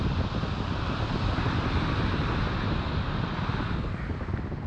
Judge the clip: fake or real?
real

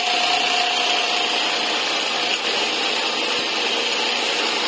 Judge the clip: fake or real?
real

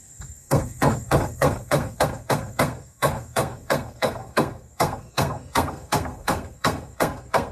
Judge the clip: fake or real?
fake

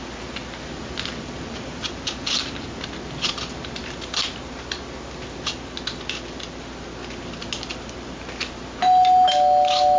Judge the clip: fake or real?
real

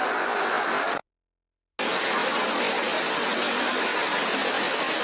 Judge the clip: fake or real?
real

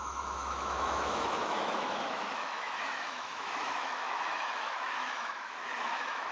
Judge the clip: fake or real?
fake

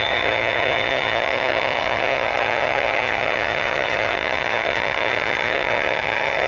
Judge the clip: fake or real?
fake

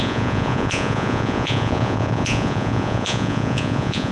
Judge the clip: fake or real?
fake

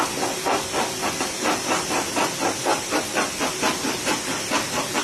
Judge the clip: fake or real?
real